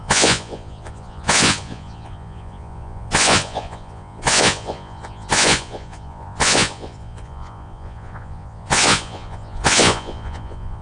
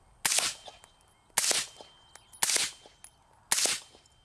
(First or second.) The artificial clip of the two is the first